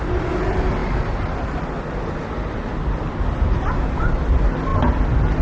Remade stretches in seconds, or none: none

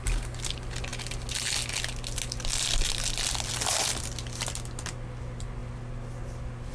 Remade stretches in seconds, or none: none

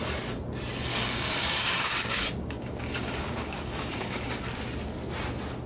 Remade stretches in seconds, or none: 0.9-4.3

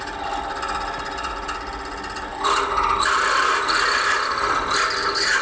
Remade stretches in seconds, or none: none